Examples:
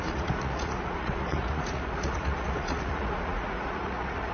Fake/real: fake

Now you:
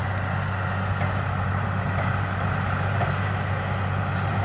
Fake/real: real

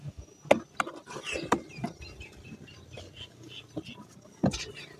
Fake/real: real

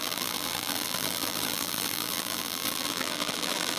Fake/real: fake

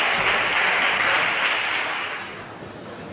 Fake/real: real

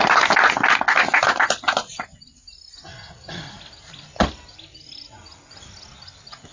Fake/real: real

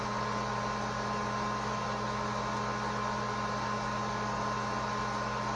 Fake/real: real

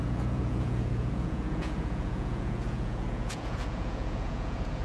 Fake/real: fake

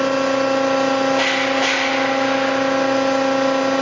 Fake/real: real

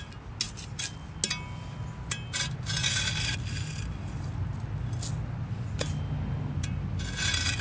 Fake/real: real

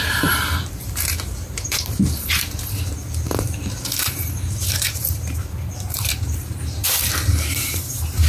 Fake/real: fake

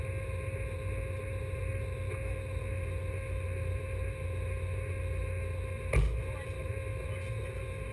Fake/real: real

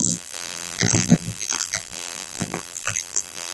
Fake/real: fake